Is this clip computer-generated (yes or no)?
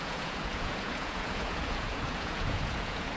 yes